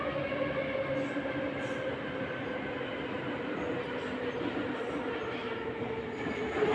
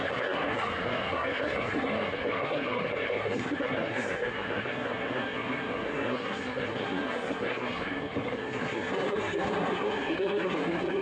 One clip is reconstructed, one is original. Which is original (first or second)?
first